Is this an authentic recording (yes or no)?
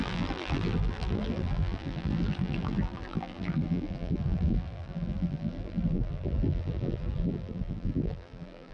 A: no